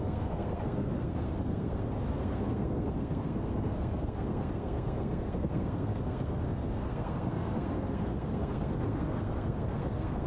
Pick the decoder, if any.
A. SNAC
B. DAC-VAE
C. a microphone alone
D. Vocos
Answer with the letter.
A